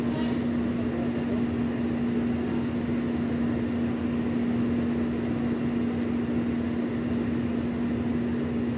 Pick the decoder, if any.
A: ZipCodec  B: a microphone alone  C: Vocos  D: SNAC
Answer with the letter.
B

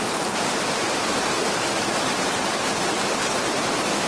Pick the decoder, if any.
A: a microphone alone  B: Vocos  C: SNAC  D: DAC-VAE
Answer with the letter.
A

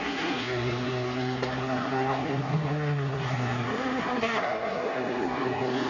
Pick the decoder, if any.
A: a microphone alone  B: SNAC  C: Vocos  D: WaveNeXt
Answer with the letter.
B